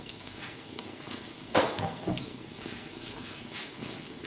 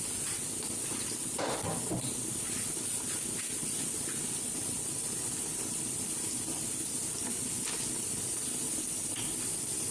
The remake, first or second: first